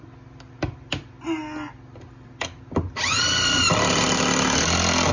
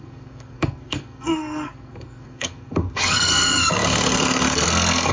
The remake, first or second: second